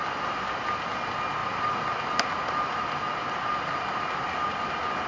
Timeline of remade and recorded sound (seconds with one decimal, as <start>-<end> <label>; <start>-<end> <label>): 0.0-1.4 recorded; 1.4-4.5 remade; 4.5-5.1 recorded